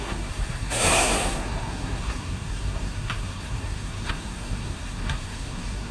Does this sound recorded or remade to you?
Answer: remade